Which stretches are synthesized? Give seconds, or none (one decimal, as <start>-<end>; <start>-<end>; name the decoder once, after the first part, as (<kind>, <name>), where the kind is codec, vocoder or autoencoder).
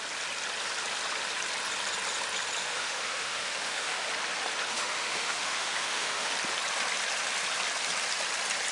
2.6-4.1 (autoencoder, DAC-VAE); 4.7-6.3